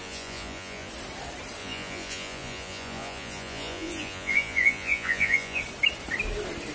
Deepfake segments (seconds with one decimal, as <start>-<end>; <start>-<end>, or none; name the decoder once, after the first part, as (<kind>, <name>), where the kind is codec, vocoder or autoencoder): 0.0-0.9 (vocoder, Vocos); 1.6-5.6